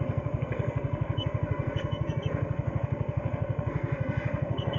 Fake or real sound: fake